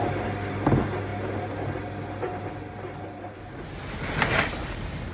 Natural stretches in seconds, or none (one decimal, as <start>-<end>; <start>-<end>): 0.0-5.1